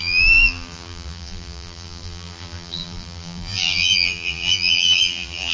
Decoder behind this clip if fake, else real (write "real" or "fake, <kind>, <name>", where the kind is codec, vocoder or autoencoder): fake, vocoder, BigVGAN v2